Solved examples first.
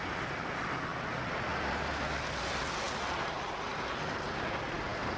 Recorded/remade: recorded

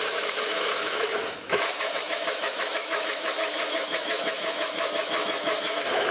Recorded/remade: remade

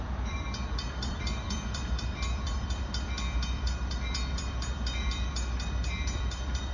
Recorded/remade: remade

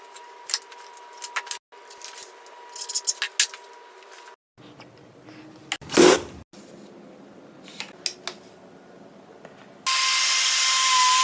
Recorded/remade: recorded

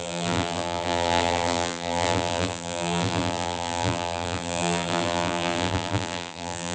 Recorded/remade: remade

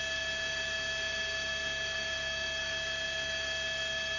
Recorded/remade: remade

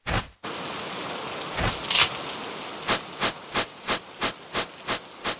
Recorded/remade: recorded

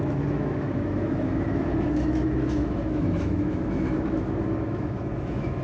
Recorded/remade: remade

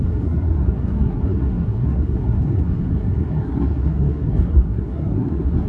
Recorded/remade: remade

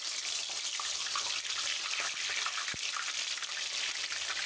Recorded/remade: recorded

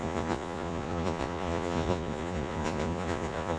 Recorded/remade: remade